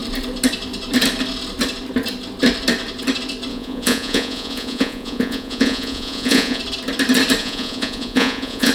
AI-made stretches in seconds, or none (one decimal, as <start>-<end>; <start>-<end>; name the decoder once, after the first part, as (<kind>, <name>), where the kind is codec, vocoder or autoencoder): 3.5-6.6 (vocoder, Vocos); 7.4-8.7